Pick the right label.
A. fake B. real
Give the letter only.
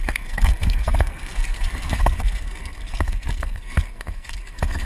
A